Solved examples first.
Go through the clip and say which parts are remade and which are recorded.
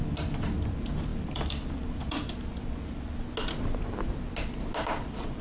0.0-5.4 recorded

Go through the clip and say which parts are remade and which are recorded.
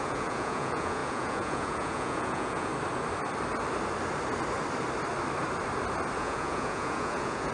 0.0-2.7 remade; 2.7-6.2 recorded; 6.2-7.5 remade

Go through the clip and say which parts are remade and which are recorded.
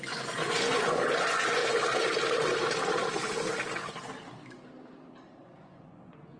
0.0-1.6 remade; 1.6-5.4 recorded; 5.4-6.4 remade